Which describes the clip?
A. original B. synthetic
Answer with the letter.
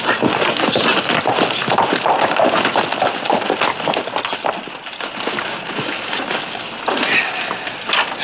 A